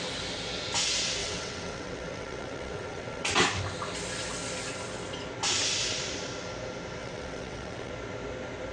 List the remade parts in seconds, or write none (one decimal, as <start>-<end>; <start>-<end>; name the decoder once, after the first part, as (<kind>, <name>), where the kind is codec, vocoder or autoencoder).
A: 1.2-3.3 (vocoder, WaveNeXt); 7.0-7.9